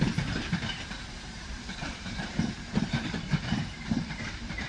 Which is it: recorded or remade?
remade